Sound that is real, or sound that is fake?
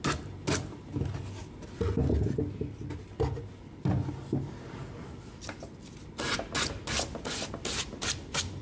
real